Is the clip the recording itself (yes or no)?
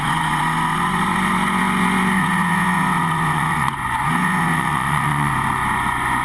no